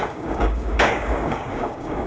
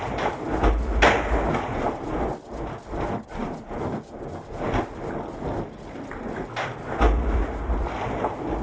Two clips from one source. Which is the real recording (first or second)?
second